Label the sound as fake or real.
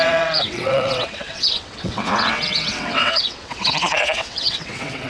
fake